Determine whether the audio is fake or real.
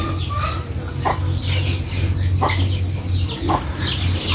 real